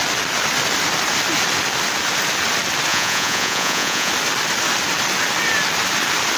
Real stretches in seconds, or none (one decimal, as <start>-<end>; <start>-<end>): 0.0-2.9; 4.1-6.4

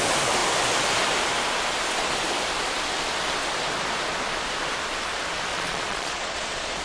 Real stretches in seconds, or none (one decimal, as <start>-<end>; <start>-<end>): 0.0-5.5

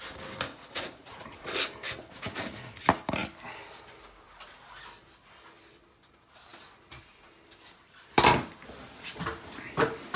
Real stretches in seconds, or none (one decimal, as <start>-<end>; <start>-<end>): 0.0-0.5; 1.5-10.2

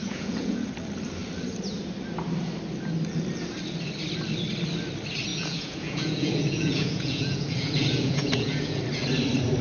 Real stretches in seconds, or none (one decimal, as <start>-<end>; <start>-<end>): 0.7-5.3; 8.8-9.6